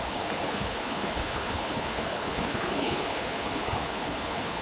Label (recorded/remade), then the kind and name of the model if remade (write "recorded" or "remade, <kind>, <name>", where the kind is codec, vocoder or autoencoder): remade, codec, HILCodec